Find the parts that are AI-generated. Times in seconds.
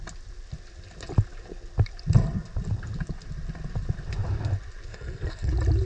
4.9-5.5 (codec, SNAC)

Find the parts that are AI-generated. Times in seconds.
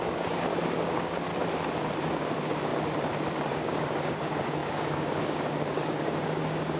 0.0-1.3 (codec, DAC); 2.0-2.7; 3.5-6.8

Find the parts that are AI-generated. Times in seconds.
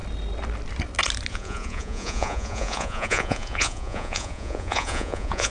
1.3-5.5 (vocoder, Vocos)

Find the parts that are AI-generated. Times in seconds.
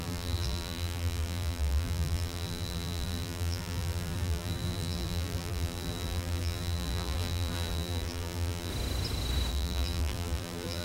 0.0-8.7 (vocoder, BigVGAN v2); 9.5-10.8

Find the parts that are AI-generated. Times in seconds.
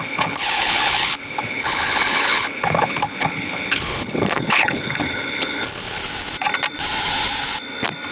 0.0-6.0 (codec, HILCodec)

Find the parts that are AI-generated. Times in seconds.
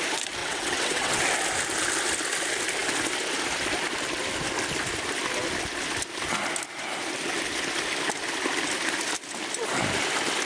0.4-1.2 (vocoder, WaveNeXt)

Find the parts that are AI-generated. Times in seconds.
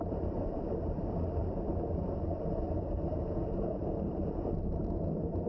0.0-1.4 (vocoder, BigVGAN v2); 2.4-5.5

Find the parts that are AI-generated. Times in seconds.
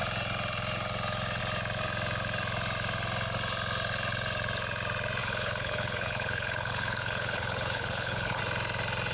5.2-8.4 (codec, HILCodec)